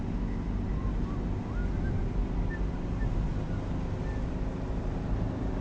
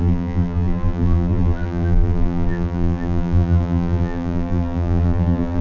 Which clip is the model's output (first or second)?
second